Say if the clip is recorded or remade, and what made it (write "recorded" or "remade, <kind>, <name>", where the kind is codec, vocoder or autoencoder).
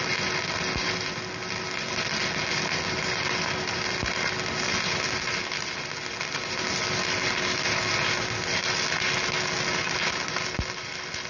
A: recorded